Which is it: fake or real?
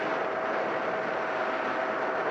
real